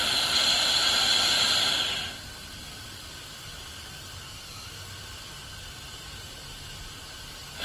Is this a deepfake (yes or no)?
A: no